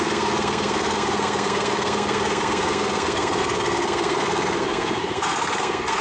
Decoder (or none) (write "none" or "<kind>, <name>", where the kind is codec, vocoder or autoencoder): codec, SNAC